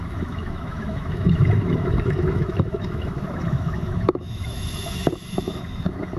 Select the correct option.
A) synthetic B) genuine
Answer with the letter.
A